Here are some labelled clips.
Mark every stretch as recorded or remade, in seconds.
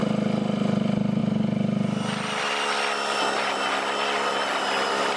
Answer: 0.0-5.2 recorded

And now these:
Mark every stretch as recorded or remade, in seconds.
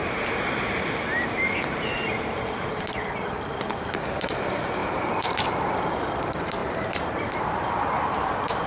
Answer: 0.0-8.7 remade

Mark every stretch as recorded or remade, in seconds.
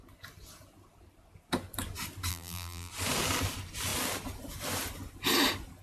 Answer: 0.0-2.3 recorded; 2.3-2.9 remade; 2.9-5.8 recorded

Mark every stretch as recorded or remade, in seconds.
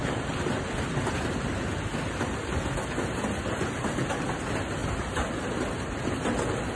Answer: 0.0-6.8 recorded